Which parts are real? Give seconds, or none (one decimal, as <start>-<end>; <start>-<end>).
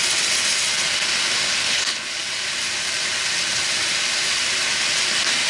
0.0-1.6; 2.1-5.5